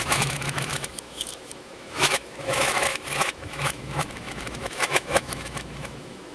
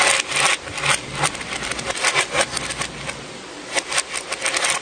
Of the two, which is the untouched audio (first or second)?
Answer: second